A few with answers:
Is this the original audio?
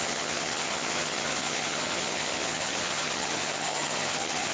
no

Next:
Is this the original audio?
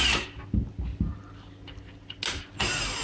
yes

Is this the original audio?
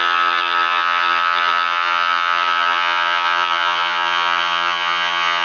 no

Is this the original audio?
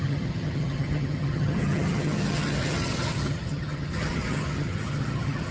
no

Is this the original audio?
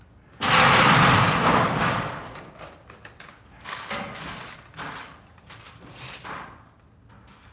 yes